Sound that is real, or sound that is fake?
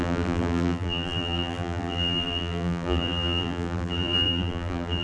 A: fake